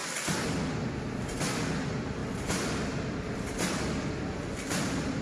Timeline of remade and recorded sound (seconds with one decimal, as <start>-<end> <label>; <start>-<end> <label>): 0.0-5.2 recorded